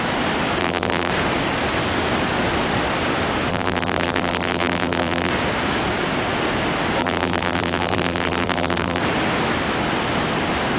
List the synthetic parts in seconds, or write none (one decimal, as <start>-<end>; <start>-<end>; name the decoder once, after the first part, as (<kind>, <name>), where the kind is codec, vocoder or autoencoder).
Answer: 0.6-1.1 (vocoder, BigVGAN v2); 3.5-5.3; 7.0-9.0